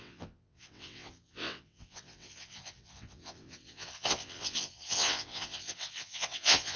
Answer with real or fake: fake